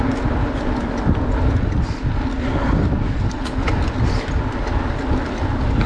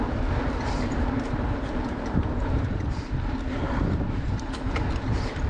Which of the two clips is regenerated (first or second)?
second